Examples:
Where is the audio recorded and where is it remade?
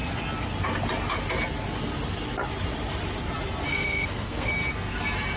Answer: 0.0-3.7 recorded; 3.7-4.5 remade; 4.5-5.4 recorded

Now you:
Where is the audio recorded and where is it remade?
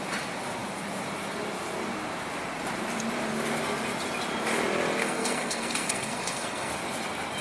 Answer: 0.0-5.0 recorded; 5.0-6.7 remade; 6.7-7.4 recorded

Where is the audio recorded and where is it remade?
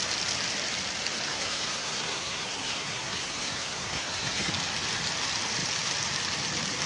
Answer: 0.0-1.3 recorded; 1.3-4.5 remade; 4.5-6.9 recorded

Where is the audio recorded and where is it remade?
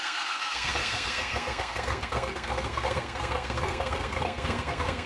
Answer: 0.0-5.1 remade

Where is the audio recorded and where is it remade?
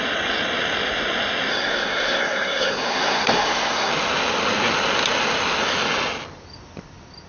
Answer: 0.0-1.5 recorded; 1.5-3.9 remade; 3.9-7.3 recorded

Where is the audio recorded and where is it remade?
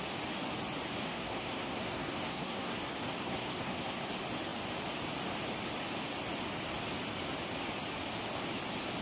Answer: 0.0-1.1 recorded; 1.1-2.8 remade; 2.8-3.2 recorded; 3.2-4.1 remade; 4.1-9.0 recorded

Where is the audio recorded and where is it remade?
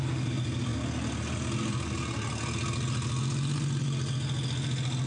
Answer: 0.0-5.1 recorded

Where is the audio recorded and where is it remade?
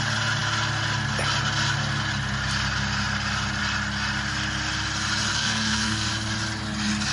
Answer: 0.0-5.3 recorded; 5.3-6.1 remade; 6.1-7.1 recorded